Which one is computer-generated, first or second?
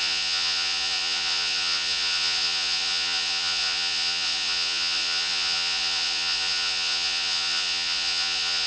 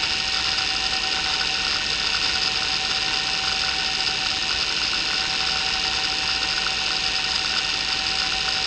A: first